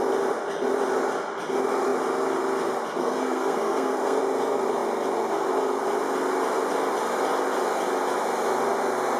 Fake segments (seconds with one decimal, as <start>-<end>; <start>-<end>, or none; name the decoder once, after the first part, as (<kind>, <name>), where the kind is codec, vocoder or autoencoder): 3.0-4.2 (codec, SNAC)